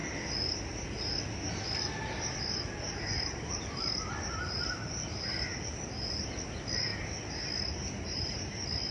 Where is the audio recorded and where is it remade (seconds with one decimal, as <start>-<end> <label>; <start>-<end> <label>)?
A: 0.0-3.2 recorded; 3.2-6.9 remade; 6.9-8.9 recorded